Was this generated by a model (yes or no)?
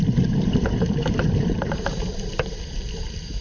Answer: yes